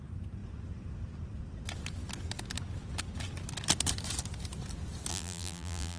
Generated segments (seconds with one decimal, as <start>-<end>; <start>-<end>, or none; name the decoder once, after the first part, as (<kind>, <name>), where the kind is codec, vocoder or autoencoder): 5.1-6.0 (vocoder, BigVGAN v2)